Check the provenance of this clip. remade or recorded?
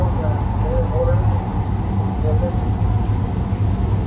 recorded